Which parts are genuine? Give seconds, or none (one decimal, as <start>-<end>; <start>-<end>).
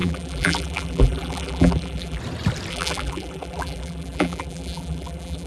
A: 2.2-2.7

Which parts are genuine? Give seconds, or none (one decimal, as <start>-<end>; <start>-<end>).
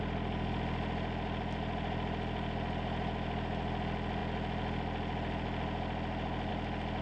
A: 0.0-7.0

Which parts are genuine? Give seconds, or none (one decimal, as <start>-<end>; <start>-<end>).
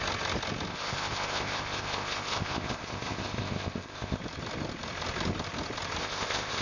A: 0.0-0.7; 4.2-6.0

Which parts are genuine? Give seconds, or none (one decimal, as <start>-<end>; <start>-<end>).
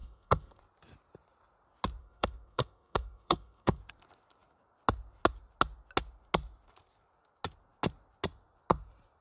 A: 0.6-2.0; 3.8-9.2